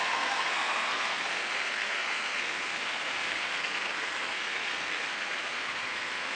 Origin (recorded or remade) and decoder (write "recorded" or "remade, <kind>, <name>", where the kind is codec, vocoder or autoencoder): remade, codec, SNAC